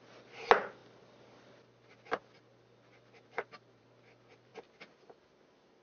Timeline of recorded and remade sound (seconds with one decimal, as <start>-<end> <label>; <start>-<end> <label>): 0.0-5.8 recorded